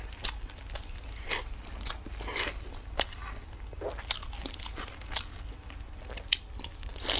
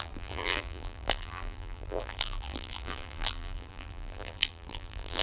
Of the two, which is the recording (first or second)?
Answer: first